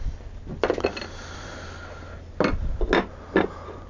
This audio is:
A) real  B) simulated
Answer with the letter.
A